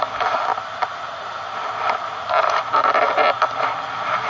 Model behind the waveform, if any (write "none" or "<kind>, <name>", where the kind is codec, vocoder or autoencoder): none